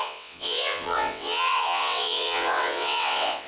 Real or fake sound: fake